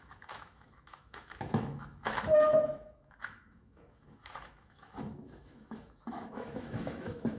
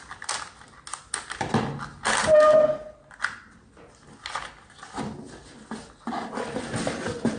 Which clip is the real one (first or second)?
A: second